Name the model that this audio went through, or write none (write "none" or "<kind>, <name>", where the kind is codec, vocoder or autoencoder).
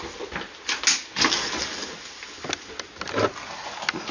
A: none